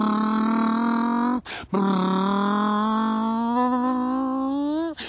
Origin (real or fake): real